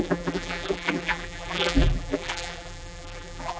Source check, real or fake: fake